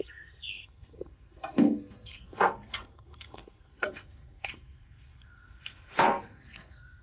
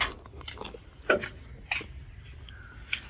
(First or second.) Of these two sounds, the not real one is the first